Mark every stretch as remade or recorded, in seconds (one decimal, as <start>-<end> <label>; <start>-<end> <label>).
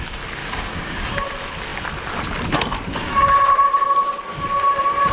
0.0-0.4 recorded; 0.4-1.1 remade; 1.1-5.1 recorded